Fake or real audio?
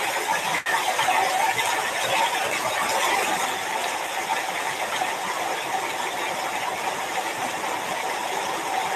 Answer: real